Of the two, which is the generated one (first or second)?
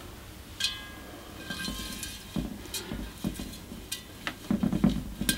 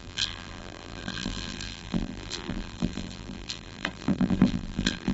second